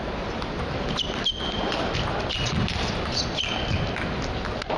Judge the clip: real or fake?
real